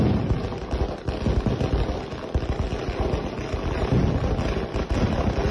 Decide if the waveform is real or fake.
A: real